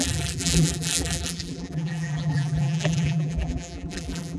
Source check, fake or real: fake